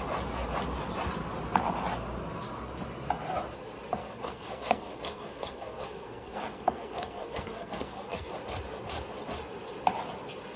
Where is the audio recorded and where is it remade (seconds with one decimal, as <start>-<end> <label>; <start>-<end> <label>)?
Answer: 0.0-4.0 recorded; 4.0-8.3 remade; 8.3-10.6 recorded